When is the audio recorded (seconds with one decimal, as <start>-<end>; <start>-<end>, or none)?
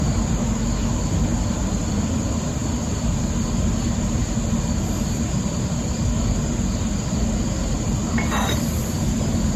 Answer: 0.0-9.6